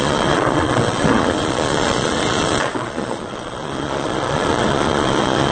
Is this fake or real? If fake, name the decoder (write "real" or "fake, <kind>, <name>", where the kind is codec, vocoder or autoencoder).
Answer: fake, vocoder, Vocos